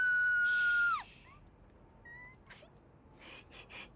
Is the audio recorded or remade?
recorded